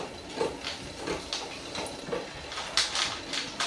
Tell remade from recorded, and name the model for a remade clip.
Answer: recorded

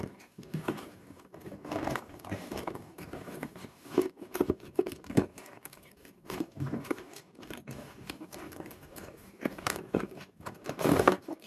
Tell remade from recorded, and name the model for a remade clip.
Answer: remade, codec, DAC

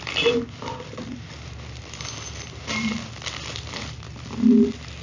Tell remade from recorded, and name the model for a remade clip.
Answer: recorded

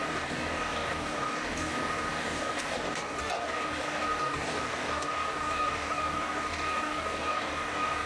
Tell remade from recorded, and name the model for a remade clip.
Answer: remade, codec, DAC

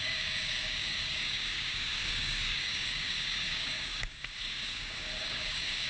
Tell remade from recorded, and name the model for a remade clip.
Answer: remade, codec, DAC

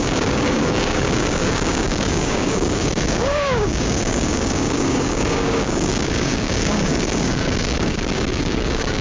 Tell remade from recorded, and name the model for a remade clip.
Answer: remade, codec, DAC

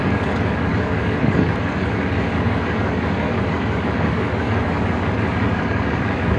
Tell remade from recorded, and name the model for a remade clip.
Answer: remade, codec, DAC